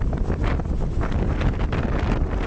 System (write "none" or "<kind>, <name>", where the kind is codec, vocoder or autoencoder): none